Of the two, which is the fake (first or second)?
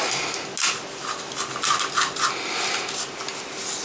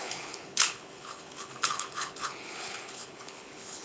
second